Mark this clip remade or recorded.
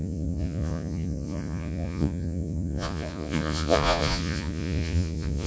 remade